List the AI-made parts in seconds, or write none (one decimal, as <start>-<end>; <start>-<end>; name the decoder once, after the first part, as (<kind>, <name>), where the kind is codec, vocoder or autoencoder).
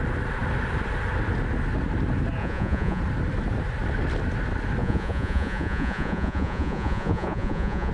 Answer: 2.4-3.0 (vocoder, Vocos); 4.8-7.9